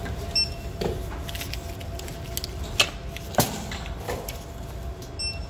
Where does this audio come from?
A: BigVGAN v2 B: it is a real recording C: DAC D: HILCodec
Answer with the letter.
B